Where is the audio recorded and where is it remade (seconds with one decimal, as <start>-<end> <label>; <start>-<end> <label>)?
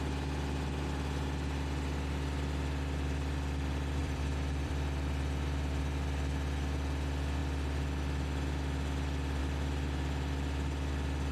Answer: 0.0-4.0 recorded; 4.0-5.8 remade; 5.8-11.3 recorded